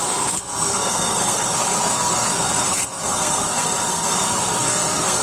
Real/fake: fake